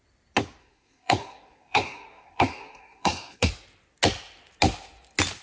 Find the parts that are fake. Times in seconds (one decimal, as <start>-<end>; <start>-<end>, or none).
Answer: 0.6-3.5